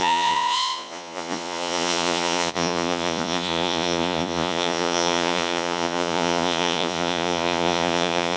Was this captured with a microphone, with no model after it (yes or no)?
no